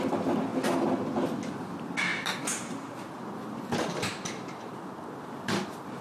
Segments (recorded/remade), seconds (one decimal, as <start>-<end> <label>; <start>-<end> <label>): 0.0-6.0 recorded